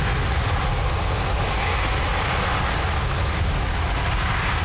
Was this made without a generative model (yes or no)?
yes